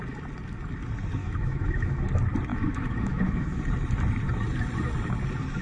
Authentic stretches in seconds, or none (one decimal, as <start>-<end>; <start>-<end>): 0.0-1.2; 2.0-2.5; 3.6-5.6